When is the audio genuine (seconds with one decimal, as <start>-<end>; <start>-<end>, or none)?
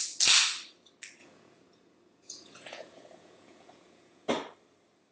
0.0-1.2; 4.3-5.1